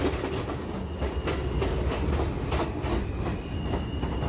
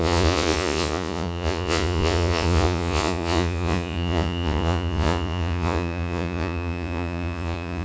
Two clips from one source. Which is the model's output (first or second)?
second